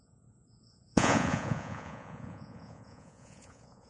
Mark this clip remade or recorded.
remade